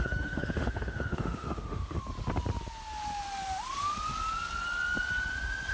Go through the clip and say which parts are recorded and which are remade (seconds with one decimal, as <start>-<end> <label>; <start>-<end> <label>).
0.0-2.0 remade; 2.0-5.7 recorded